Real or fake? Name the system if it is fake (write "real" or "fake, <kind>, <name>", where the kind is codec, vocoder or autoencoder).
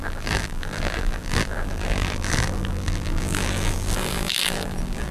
fake, vocoder, BigVGAN v2